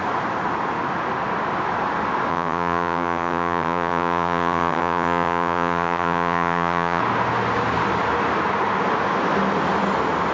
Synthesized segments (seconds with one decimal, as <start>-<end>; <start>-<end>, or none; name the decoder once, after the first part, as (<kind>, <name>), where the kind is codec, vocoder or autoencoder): 2.3-7.0 (vocoder, HiFi-GAN)